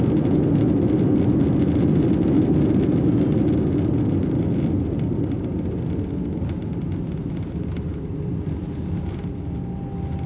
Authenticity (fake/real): real